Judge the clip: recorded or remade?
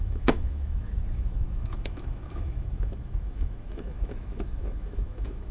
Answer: remade